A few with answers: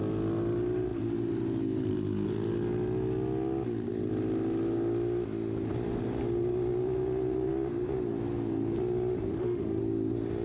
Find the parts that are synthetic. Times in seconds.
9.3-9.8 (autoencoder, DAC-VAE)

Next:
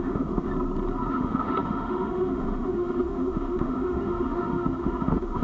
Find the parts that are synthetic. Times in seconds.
0.0-0.5 (autoencoder, DAC-VAE); 1.1-5.4

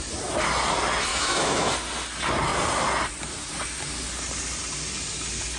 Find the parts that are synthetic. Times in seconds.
1.1-1.7 (autoencoder, DAC-VAE)

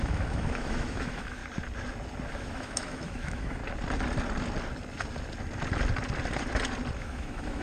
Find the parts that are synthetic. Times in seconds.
0.0-1.4 (autoencoder, DAC-VAE); 2.3-3.6; 7.0-7.6